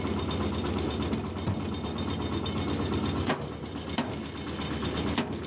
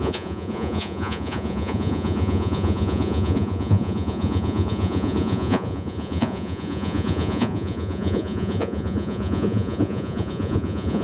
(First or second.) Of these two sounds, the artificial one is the second